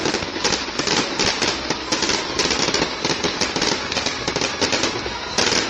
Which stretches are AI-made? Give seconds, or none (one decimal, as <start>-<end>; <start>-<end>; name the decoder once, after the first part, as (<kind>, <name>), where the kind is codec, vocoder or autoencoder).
none